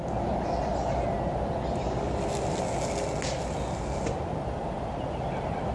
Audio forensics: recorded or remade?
recorded